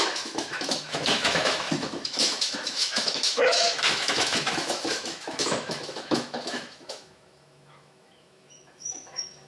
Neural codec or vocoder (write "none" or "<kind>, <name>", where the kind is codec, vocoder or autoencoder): autoencoder, DAC-VAE